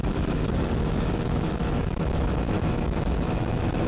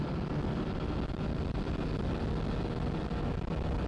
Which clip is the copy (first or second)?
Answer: first